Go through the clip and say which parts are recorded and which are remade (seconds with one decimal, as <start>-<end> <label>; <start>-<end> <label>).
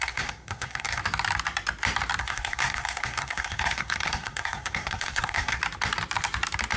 0.0-1.0 remade; 1.0-2.2 recorded; 2.2-5.6 remade; 5.6-6.8 recorded